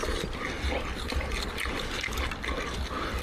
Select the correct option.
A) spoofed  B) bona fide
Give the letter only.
B